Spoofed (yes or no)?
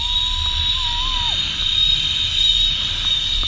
no